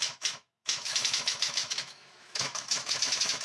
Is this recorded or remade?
remade